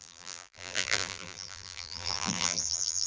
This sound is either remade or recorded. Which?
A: remade